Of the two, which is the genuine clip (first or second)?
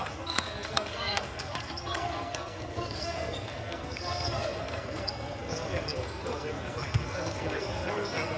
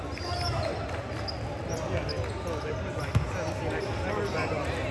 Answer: second